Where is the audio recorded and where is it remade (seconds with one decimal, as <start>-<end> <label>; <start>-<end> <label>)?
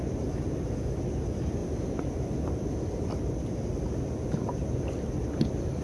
0.0-5.8 recorded